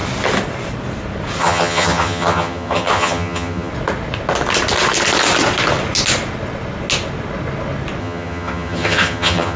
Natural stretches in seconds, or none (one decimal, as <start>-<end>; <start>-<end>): 0.0-1.4; 3.7-8.0